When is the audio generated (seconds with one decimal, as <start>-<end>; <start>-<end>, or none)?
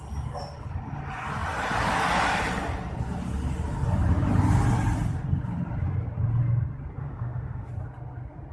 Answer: 7.0-7.7